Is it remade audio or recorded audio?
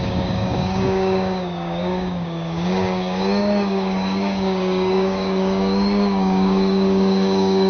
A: remade